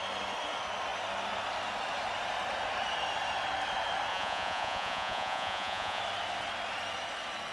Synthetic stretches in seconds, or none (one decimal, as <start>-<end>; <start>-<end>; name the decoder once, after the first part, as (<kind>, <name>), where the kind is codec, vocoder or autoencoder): 4.1-6.0 (vocoder, Vocos)